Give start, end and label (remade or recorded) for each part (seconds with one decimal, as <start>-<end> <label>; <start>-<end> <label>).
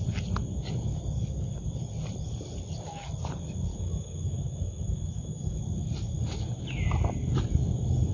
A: 0.0-3.7 recorded; 3.7-5.6 remade; 5.6-8.1 recorded